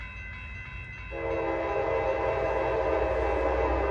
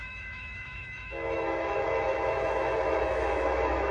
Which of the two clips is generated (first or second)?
second